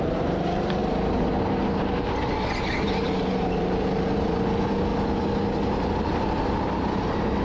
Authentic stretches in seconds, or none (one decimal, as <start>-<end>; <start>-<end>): 0.8-2.6; 4.9-5.9